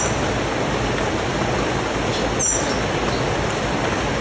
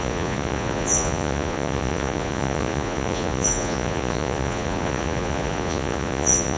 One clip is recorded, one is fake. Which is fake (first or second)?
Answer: second